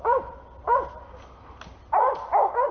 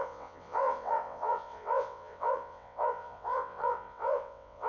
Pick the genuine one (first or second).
first